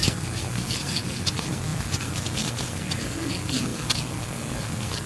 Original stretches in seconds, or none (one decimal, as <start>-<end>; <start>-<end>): none